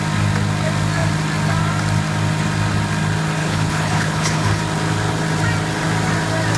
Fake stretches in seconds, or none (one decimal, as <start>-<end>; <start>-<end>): 3.4-4.6